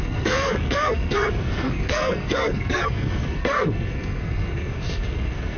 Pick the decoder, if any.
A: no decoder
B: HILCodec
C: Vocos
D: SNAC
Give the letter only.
D